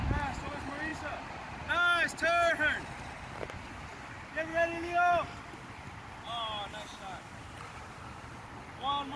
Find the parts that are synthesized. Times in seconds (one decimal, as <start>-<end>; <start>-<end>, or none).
4.5-5.1